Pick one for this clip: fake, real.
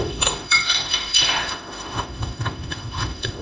fake